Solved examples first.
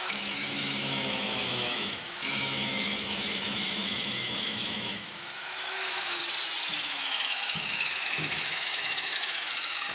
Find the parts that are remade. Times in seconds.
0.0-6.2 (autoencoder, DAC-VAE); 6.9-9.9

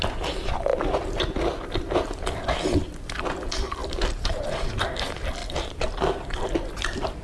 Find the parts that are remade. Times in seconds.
3.8-4.9 (vocoder, BigVGAN v2)

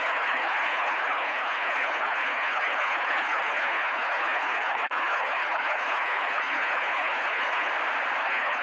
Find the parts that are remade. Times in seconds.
0.0-7.7 (codec, HILCodec); 8.2-8.6

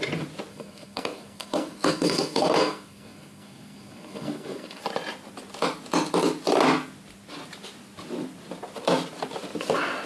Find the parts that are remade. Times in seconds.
0.5-4.8 (codec, SNAC)

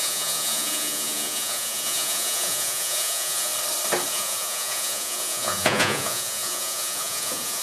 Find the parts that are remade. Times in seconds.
0.0-3.5 (vocoder, Vocos); 4.1-7.6